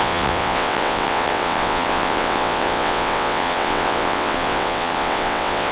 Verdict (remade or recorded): remade